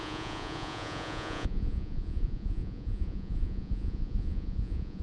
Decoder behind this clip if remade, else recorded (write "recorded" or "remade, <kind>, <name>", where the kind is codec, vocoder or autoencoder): remade, vocoder, Vocos